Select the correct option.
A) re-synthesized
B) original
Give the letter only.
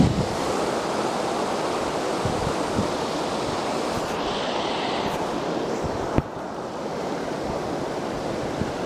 B